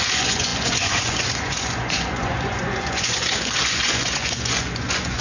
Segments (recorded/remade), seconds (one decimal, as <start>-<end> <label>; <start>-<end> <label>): 0.0-5.2 remade